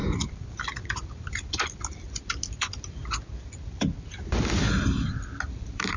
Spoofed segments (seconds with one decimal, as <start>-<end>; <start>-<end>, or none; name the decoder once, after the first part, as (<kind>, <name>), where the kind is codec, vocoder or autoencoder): 0.0-6.0 (vocoder, BigVGAN v2)